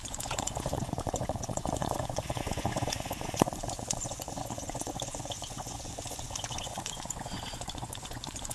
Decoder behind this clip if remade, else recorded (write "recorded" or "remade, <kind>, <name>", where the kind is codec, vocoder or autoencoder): remade, vocoder, Vocos